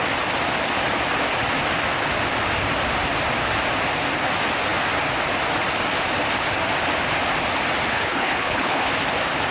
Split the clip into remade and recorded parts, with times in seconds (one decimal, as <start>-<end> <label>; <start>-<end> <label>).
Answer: 0.0-7.9 recorded; 7.9-8.9 remade; 8.9-9.5 recorded